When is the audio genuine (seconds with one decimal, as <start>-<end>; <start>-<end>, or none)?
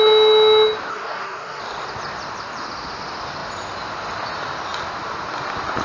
0.0-0.9; 1.6-5.8